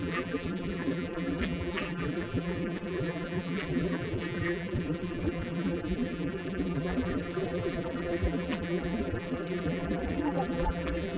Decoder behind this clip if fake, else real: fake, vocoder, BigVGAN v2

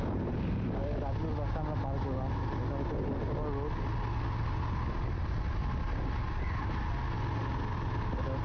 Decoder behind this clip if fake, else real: real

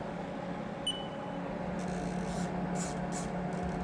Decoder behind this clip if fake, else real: real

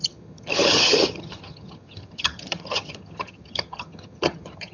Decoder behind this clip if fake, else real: fake, vocoder, HiFi-GAN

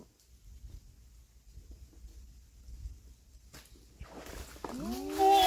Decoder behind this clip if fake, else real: real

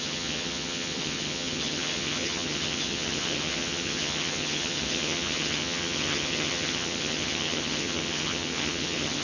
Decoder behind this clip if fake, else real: fake, vocoder, HiFi-GAN